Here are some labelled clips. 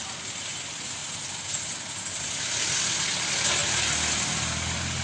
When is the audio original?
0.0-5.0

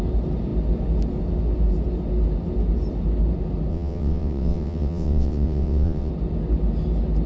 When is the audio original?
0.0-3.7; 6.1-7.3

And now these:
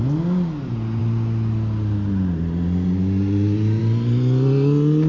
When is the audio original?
0.0-5.1